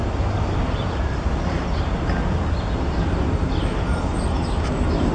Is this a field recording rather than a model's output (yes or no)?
yes